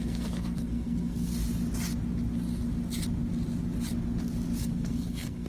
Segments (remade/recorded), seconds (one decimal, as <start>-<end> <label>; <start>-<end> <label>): 0.0-1.3 remade; 1.3-4.6 recorded; 4.6-5.5 remade